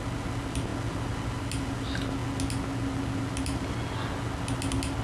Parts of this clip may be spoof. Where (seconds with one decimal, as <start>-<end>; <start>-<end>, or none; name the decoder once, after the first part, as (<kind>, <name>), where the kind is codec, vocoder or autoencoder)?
none